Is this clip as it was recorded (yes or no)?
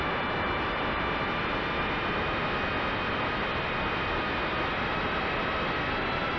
yes